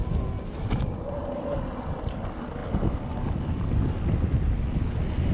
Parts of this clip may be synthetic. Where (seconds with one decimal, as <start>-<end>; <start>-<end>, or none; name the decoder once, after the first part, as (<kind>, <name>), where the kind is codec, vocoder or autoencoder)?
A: none

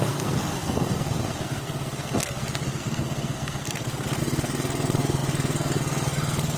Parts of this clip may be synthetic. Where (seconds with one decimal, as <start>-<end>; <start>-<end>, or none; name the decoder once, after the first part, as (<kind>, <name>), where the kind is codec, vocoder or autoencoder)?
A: 0.0-6.6 (codec, SNAC)

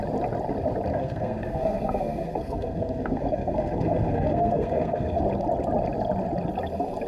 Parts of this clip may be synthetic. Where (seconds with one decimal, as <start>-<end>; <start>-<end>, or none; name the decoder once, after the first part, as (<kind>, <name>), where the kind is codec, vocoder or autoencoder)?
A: 0.9-5.2 (codec, SNAC)

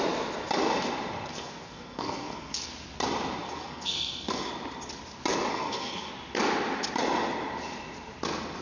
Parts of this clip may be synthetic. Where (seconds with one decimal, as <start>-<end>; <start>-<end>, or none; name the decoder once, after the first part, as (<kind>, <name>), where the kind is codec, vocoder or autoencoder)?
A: 1.3-2.7 (codec, SNAC); 3.4-4.5; 5.5-6.1

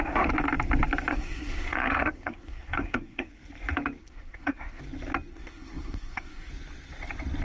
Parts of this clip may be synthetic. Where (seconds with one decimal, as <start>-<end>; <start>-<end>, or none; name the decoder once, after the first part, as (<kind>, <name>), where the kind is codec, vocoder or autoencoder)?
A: 1.1-3.3 (codec, SNAC); 4.0-4.8; 5.3-6.5

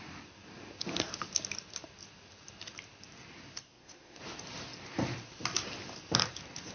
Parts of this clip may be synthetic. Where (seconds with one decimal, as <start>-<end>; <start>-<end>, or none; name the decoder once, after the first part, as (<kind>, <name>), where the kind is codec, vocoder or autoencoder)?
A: 3.6-4.2 (codec, SNAC)